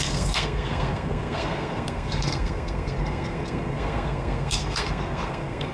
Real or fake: fake